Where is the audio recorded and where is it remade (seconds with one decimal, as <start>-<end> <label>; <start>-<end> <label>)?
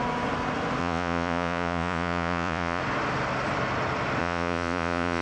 0.0-0.8 recorded; 0.8-2.8 remade; 2.8-4.2 recorded; 4.2-5.2 remade